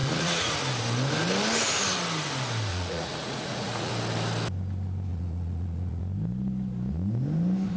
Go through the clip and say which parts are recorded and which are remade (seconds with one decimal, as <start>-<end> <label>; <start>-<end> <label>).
0.0-0.5 remade; 0.5-2.7 recorded; 2.7-3.9 remade; 3.9-5.1 recorded; 5.1-6.0 remade; 6.0-7.8 recorded